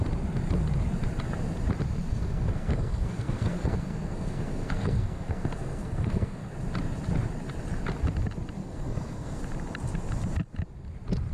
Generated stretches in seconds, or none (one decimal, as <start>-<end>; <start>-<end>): 2.1-6.5; 8.6-9.4

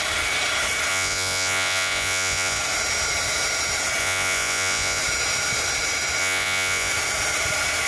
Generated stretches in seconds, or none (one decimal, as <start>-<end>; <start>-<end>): 0.9-2.6; 4.0-5.0; 6.2-6.9

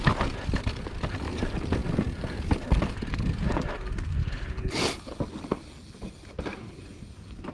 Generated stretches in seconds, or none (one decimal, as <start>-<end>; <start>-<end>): 4.2-5.2

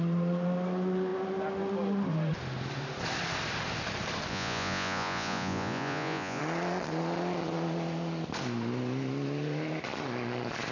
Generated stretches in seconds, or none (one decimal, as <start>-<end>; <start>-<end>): 4.3-6.4

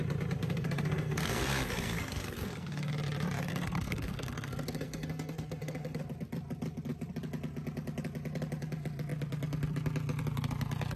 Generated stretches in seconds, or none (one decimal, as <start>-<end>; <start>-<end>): 0.4-2.9; 3.5-6.0

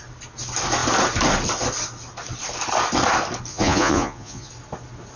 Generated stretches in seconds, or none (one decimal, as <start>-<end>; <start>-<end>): 3.5-4.5